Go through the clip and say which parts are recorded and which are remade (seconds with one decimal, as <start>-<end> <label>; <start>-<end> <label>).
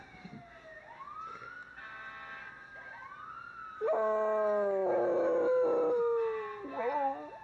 0.0-7.4 recorded